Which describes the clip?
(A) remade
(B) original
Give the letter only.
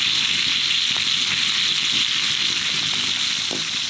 B